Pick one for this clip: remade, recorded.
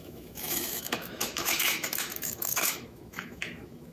remade